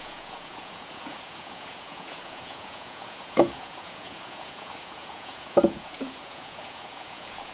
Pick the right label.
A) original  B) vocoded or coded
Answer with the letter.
B